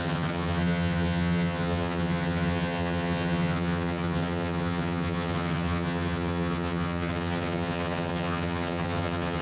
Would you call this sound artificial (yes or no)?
yes